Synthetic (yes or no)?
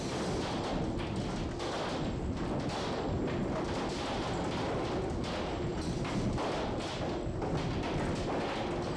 no